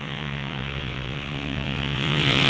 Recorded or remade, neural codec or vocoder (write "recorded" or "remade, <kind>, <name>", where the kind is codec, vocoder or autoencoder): remade, vocoder, WaveNeXt